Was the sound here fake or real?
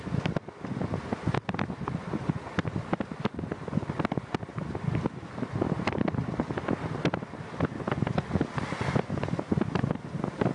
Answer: real